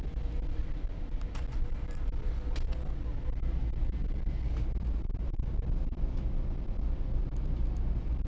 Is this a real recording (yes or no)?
yes